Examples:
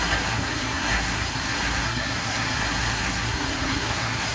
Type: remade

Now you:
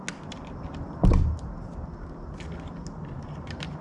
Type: recorded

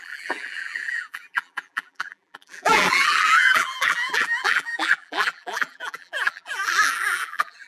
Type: remade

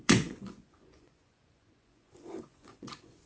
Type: remade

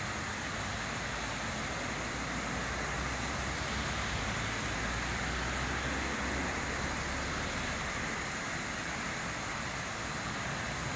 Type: recorded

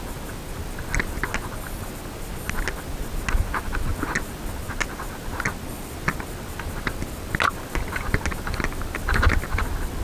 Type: recorded